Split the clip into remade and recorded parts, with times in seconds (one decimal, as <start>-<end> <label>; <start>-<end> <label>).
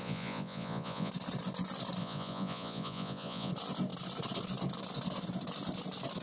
0.0-1.1 remade; 1.1-2.0 recorded; 2.0-3.5 remade; 3.5-6.2 recorded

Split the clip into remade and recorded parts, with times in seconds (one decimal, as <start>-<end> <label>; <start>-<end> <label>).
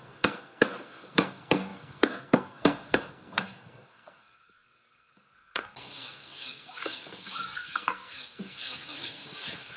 0.0-9.8 remade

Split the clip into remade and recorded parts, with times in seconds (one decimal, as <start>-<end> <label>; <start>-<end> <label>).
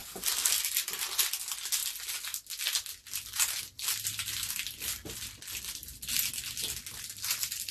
0.0-7.7 recorded